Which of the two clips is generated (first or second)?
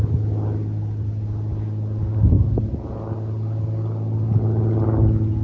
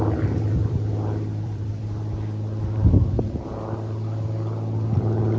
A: second